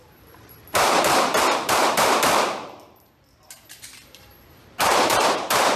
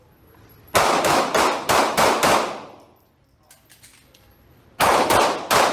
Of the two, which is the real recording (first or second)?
second